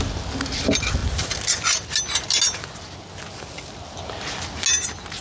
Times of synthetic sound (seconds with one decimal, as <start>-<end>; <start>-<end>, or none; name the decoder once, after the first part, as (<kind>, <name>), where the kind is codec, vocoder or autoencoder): none

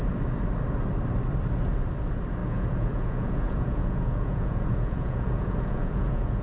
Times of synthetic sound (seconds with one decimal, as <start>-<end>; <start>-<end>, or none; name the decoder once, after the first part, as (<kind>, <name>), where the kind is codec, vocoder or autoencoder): 2.4-6.4 (vocoder, Vocos)

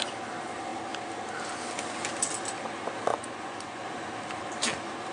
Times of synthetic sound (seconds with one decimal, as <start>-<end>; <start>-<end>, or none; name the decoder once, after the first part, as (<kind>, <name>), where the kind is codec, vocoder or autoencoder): 3.1-3.8 (vocoder, Vocos)